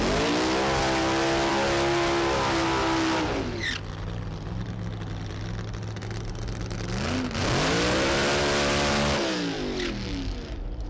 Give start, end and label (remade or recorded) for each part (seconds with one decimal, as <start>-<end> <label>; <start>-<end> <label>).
0.0-10.9 recorded

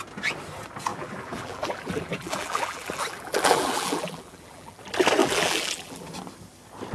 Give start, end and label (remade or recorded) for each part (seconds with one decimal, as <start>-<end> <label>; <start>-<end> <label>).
0.0-0.9 recorded; 0.9-4.8 remade; 4.8-5.2 recorded; 5.2-6.1 remade; 6.1-6.9 recorded

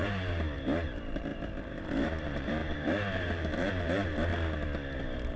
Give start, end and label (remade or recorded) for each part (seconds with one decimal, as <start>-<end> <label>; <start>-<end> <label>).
0.0-4.3 remade; 4.3-5.0 recorded; 5.0-5.4 remade

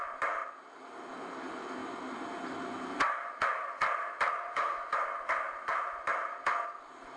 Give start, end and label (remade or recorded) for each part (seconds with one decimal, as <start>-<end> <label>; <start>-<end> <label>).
0.0-0.4 remade; 0.4-1.1 recorded; 1.1-1.8 remade; 1.8-4.3 recorded; 4.3-6.1 remade; 6.1-6.8 recorded; 6.8-7.2 remade

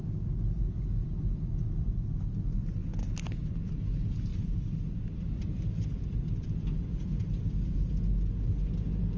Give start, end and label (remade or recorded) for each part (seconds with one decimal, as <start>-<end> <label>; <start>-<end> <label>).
0.0-1.0 recorded; 1.0-2.1 remade; 2.1-4.3 recorded; 4.3-7.9 remade; 7.9-9.2 recorded